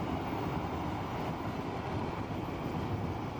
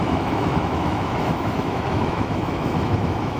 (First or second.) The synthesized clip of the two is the second